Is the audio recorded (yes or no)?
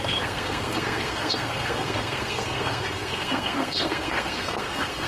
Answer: no